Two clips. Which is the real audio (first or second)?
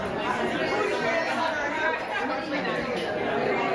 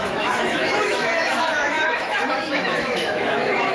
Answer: first